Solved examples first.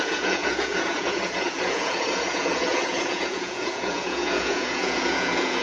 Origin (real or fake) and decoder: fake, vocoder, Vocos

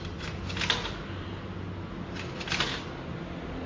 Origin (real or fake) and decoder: real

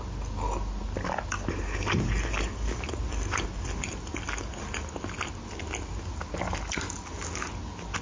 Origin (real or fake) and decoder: real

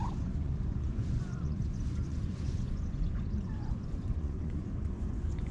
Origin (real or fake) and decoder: fake, vocoder, Vocos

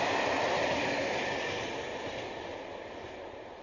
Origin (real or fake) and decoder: real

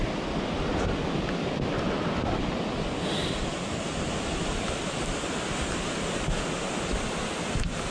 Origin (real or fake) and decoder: real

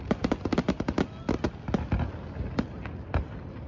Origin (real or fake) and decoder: real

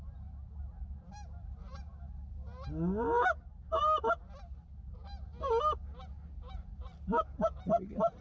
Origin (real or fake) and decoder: real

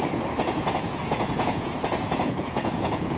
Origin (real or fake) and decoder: fake, vocoder, Vocos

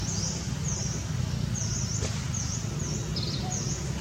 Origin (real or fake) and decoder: real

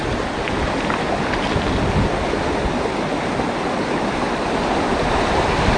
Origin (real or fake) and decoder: real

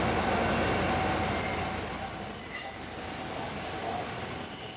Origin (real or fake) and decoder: real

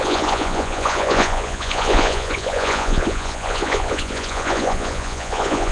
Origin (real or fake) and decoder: fake, vocoder, Vocos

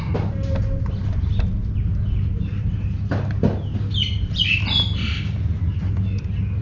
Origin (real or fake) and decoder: real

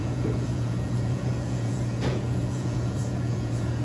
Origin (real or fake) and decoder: fake, vocoder, Vocos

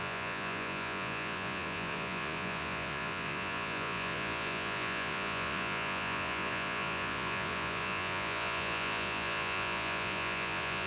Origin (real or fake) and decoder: fake, vocoder, Vocos